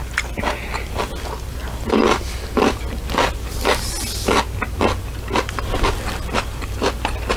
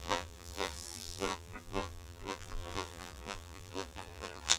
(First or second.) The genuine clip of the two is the first